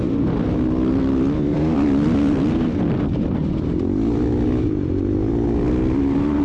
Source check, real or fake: real